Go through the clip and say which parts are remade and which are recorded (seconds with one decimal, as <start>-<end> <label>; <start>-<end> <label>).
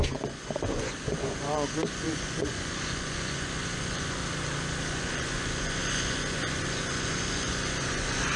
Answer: 0.0-4.2 remade; 4.2-4.9 recorded; 4.9-8.4 remade